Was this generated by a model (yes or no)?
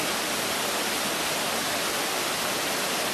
no